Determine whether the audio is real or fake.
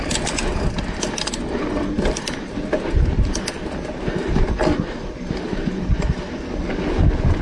real